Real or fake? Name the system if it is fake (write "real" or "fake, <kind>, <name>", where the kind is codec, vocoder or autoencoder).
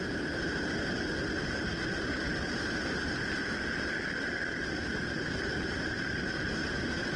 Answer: real